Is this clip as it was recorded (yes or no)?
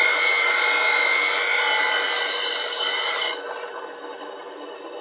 yes